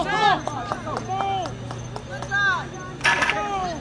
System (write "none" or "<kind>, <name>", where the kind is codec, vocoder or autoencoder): none